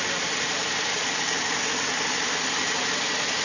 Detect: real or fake real